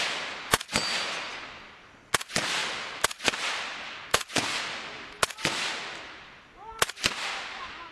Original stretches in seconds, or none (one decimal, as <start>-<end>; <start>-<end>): 0.0-2.6; 4.6-7.9